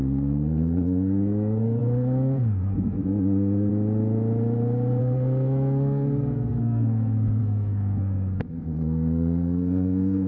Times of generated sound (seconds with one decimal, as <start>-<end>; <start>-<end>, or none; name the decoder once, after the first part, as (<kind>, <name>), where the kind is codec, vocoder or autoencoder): 0.0-3.7 (codec, SNAC); 5.0-10.3